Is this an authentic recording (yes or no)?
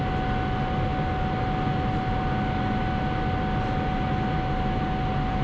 yes